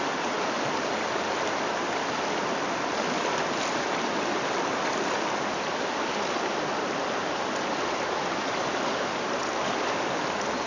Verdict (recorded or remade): recorded